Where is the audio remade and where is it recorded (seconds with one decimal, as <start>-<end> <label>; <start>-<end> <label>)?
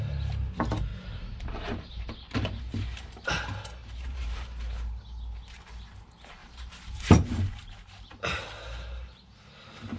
0.0-0.9 recorded; 0.9-2.6 remade; 2.6-3.8 recorded; 3.8-4.6 remade; 4.6-6.4 recorded; 6.4-8.1 remade; 8.1-10.0 recorded